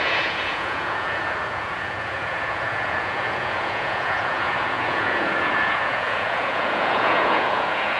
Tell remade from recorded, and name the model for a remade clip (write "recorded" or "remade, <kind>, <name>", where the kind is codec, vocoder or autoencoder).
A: remade, vocoder, Vocos